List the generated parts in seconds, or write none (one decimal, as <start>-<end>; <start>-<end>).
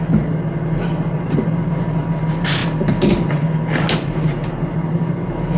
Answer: none